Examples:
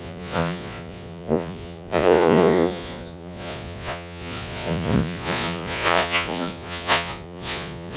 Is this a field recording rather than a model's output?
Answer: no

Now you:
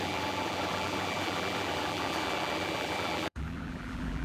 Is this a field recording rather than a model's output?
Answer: no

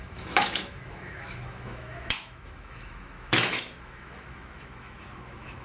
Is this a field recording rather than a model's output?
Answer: no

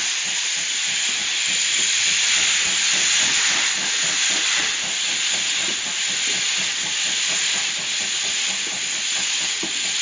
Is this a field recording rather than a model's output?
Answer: yes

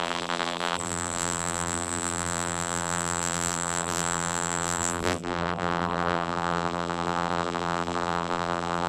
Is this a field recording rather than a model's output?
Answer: no